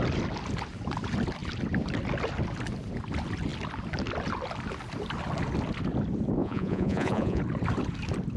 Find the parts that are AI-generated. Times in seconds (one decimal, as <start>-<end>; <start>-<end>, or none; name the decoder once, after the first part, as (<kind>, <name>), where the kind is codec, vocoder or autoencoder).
6.4-7.4 (vocoder, Vocos)